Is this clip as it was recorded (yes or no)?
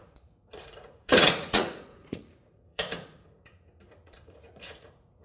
no